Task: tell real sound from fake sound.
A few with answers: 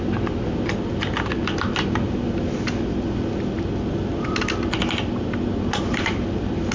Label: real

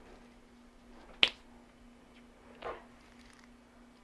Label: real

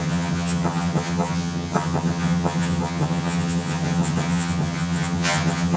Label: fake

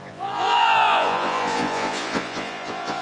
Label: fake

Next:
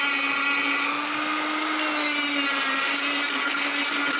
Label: real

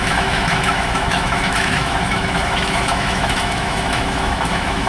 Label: fake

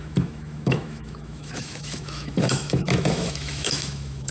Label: fake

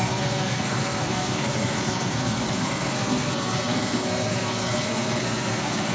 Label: fake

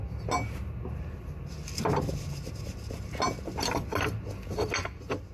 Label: real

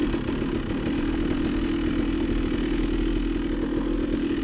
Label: real